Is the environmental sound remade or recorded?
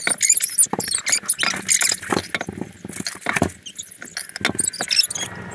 recorded